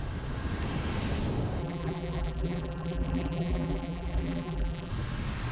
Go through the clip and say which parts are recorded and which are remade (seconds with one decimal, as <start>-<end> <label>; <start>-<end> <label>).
0.0-1.6 recorded; 1.6-4.9 remade; 4.9-5.5 recorded